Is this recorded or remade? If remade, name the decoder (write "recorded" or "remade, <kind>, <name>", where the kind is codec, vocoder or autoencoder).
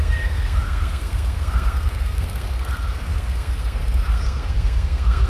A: remade, codec, SNAC